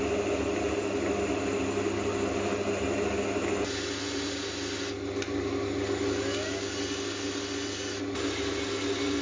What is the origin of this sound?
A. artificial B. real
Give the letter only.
B